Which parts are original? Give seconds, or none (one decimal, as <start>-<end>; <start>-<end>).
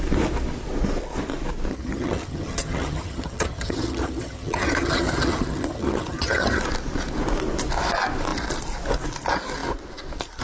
0.0-1.7; 6.6-10.4